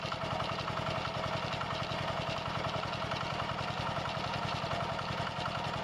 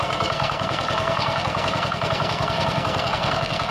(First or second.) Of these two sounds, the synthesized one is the second